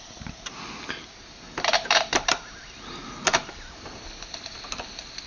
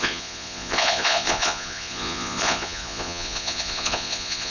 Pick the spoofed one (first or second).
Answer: second